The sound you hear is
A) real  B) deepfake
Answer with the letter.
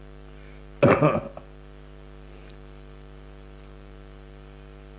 A